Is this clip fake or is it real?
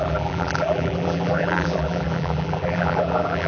fake